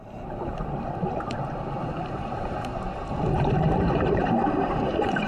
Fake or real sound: fake